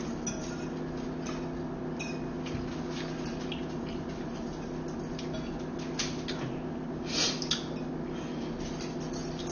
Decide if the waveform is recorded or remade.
recorded